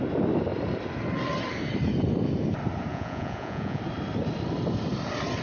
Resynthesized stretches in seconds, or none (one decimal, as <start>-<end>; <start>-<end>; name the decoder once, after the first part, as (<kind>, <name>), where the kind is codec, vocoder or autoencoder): 2.9-3.8 (vocoder, Vocos)